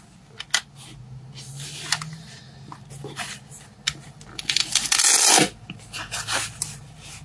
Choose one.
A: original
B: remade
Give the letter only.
A